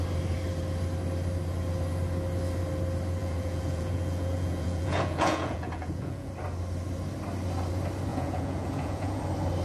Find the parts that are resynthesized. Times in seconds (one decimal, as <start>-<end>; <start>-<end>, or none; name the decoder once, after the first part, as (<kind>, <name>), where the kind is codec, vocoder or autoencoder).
3.2-6.3 (vocoder, Vocos); 8.1-9.2